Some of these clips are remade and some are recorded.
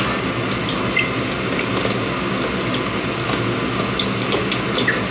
recorded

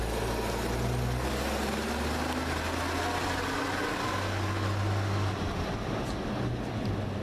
recorded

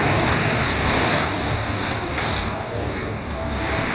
remade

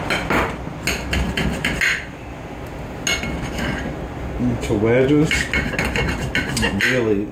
recorded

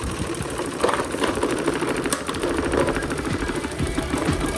remade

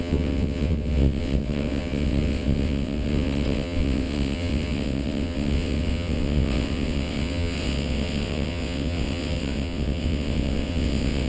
remade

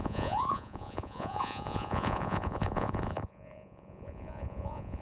remade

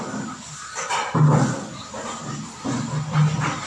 recorded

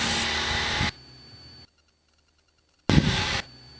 recorded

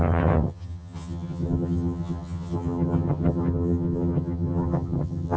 remade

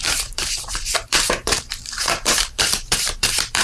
remade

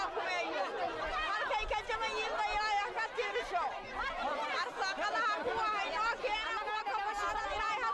recorded